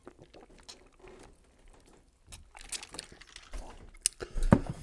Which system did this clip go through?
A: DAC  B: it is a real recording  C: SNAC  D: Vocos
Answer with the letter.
B